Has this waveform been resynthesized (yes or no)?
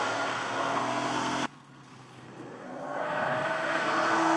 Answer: yes